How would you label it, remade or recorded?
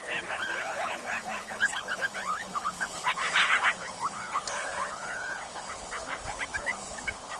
remade